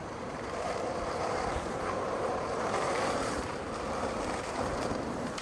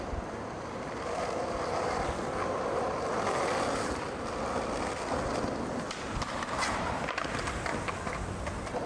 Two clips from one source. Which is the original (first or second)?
second